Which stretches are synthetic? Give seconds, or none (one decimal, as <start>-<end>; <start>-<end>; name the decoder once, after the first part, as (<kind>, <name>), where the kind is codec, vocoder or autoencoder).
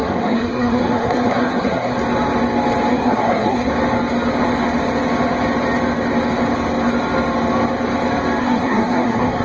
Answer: 0.0-2.0 (codec, SNAC); 2.9-3.7; 8.4-9.4